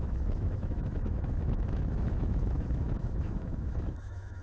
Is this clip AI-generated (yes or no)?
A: yes